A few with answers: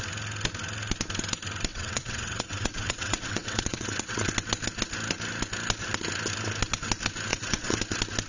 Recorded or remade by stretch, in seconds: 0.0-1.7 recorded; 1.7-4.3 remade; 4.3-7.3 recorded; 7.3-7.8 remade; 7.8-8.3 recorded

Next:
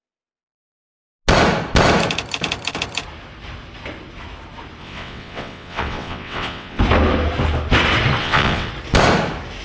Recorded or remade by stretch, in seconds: 0.0-4.8 recorded; 4.8-6.8 remade; 6.8-8.2 recorded; 8.2-8.7 remade; 8.7-9.6 recorded

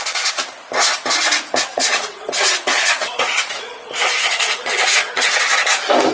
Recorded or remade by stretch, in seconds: 0.0-1.7 recorded; 1.7-5.4 remade; 5.4-6.1 recorded

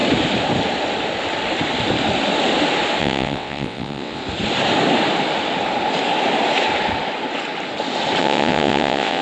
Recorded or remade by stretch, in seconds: 0.0-3.0 recorded; 3.0-4.2 remade; 4.2-8.2 recorded; 8.2-9.2 remade

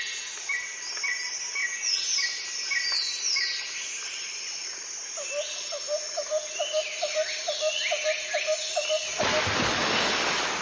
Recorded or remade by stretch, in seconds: 0.0-10.6 recorded

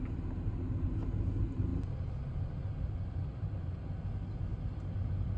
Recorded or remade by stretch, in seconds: 0.0-5.4 recorded